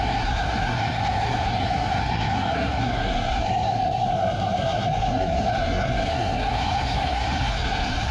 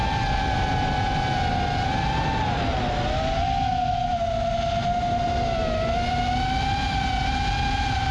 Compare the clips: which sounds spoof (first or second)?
first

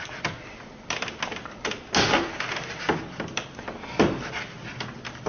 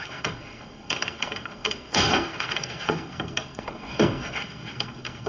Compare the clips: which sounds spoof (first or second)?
second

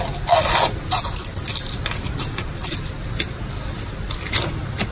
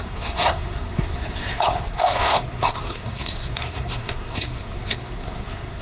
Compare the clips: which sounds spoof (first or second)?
second